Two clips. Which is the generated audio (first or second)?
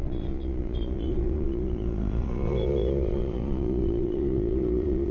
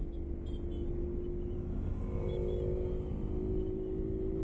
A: first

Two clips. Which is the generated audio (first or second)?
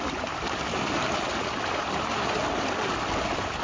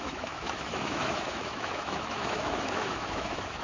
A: second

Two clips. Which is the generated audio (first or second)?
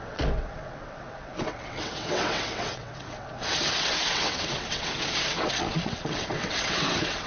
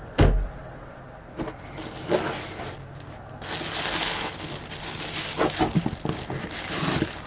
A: first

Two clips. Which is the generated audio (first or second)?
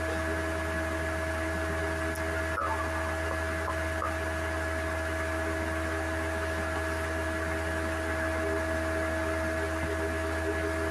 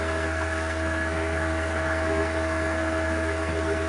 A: second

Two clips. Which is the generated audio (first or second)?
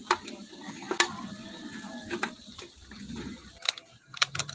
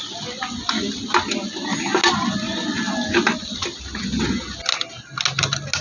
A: first